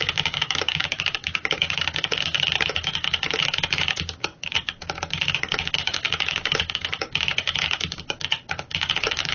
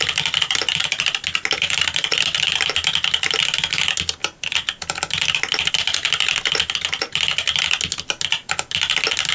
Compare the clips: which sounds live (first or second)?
second